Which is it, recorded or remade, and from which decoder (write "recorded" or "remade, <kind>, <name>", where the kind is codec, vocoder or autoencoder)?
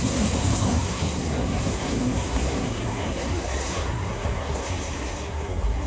remade, codec, SNAC